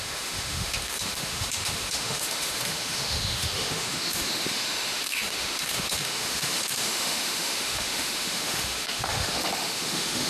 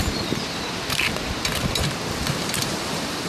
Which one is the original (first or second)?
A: second